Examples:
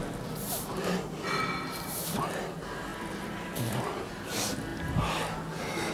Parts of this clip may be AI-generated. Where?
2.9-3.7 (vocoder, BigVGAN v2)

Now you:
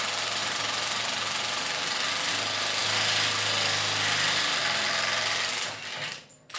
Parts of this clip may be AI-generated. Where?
none

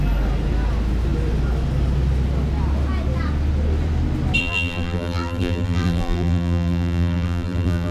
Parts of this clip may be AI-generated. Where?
4.4-7.9 (vocoder, BigVGAN v2)